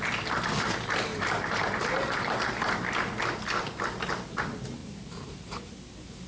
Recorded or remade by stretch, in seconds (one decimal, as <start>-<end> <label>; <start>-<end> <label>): 0.0-1.1 recorded; 1.1-2.7 remade; 2.7-4.8 recorded; 4.8-5.7 remade; 5.7-6.3 recorded